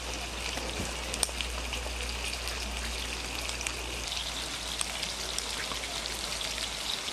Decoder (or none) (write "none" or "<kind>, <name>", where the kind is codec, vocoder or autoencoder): none